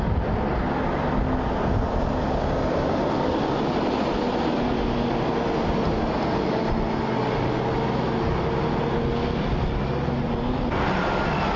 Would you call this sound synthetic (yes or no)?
no